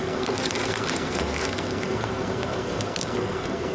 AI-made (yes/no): yes